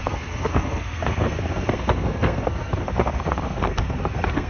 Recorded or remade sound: remade